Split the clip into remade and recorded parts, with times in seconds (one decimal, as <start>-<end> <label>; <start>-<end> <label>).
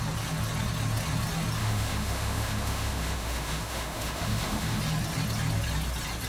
0.0-1.6 recorded; 1.6-4.8 remade; 4.8-6.3 recorded